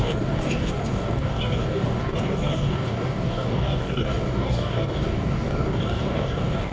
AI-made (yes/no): yes